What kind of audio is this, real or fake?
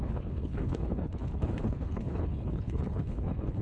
fake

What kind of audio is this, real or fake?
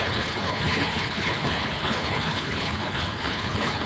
fake